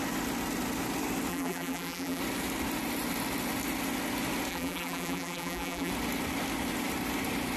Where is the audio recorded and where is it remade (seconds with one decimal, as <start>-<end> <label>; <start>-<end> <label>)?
0.0-1.3 recorded; 1.3-2.2 remade; 2.2-4.5 recorded; 4.5-5.9 remade; 5.9-7.6 recorded